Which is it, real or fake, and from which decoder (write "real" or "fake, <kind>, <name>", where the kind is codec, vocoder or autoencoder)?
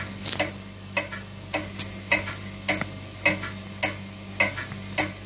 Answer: real